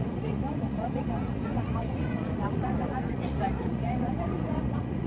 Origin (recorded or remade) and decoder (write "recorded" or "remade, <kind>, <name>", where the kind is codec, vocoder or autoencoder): remade, vocoder, Vocos